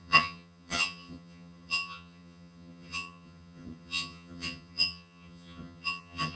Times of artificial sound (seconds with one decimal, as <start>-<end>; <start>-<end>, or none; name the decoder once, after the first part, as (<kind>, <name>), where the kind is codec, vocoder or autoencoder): 0.0-6.4 (vocoder, HiFi-GAN)